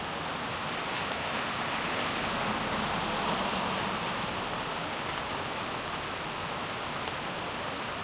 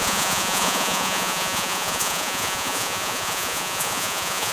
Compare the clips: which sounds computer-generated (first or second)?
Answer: second